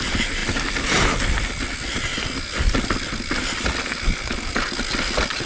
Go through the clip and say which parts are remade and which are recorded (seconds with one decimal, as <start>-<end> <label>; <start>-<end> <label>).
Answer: 0.0-2.1 recorded; 2.1-4.5 remade; 4.5-5.5 recorded